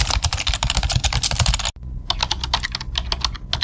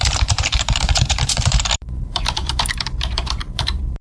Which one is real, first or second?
first